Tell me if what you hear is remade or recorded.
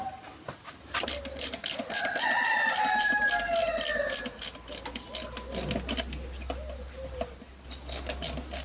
recorded